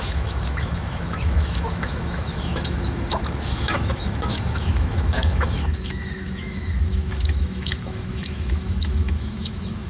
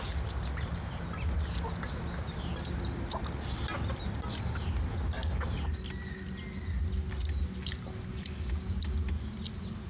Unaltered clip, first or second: second